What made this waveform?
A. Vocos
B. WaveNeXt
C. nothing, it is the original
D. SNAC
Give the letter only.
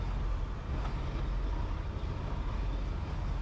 C